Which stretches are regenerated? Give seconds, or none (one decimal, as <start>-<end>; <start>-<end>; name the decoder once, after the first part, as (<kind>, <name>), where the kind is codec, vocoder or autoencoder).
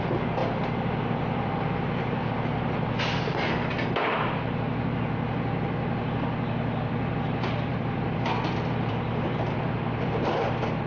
0.4-2.3 (vocoder, BigVGAN v2); 7.7-10.9